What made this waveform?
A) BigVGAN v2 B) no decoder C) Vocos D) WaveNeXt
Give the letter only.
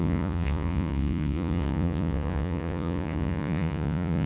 C